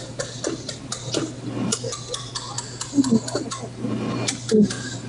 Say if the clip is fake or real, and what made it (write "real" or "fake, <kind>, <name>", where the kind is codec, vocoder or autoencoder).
real